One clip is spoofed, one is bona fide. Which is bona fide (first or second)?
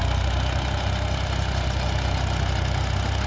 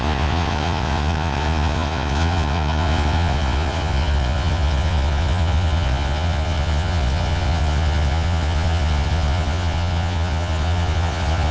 first